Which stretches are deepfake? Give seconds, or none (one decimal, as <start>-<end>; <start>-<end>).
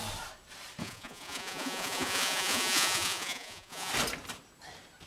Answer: 0.8-3.9